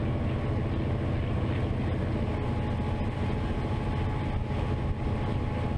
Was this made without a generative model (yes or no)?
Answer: yes